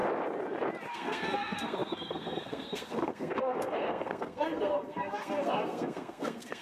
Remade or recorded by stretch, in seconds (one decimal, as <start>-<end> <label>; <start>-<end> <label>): 0.0-0.9 recorded; 0.9-6.6 remade

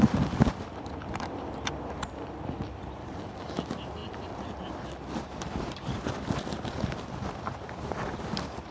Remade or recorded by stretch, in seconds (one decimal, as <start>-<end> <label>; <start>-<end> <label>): 0.0-8.7 remade

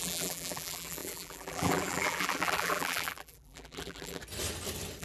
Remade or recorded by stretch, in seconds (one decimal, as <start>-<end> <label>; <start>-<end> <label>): 0.0-4.2 remade; 4.2-5.0 recorded

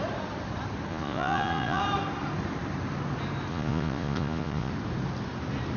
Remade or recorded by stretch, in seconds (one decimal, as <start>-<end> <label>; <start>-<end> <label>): 0.0-0.9 recorded; 0.9-1.8 remade; 1.8-3.5 recorded; 3.5-4.7 remade; 4.7-5.8 recorded

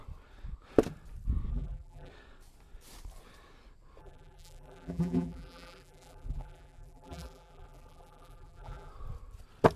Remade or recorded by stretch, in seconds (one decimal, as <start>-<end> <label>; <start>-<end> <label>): 0.0-1.5 recorded; 1.5-2.1 remade; 2.1-4.0 recorded; 4.0-8.9 remade; 8.9-9.8 recorded